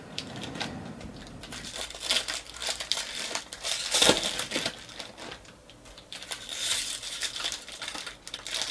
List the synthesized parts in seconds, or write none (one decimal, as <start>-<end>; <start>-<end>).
2.6-7.4